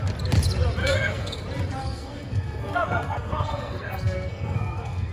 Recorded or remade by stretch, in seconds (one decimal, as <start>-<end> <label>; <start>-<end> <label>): 0.0-0.8 recorded; 0.8-1.4 remade; 1.4-1.8 recorded; 1.8-5.1 remade